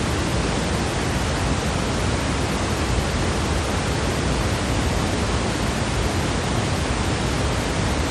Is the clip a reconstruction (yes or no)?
no